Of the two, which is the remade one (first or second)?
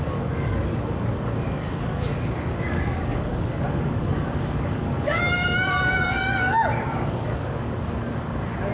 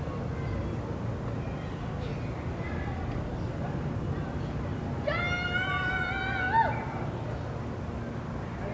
first